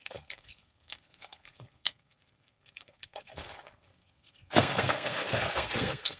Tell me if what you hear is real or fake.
fake